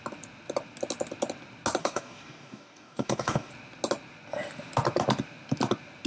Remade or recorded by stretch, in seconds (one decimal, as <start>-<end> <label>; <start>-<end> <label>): 0.0-1.8 recorded; 1.8-3.5 remade; 3.5-6.1 recorded